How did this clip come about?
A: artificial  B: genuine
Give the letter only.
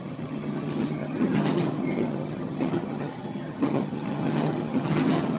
A